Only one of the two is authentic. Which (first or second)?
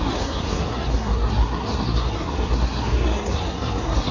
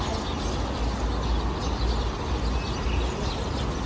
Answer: second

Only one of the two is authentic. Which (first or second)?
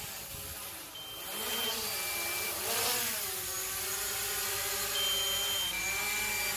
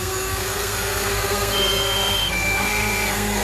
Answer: first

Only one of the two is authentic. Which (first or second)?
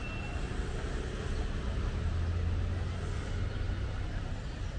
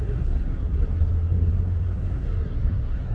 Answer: first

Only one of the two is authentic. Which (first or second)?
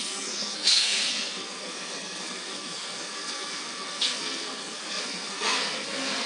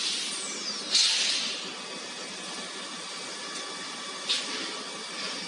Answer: second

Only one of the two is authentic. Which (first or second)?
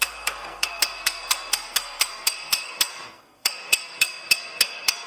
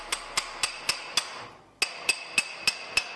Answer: second